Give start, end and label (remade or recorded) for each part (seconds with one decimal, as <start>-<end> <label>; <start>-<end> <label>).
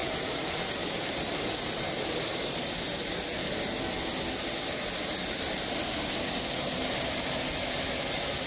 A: 0.0-2.7 remade; 2.7-8.5 recorded